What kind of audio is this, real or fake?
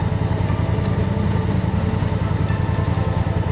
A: real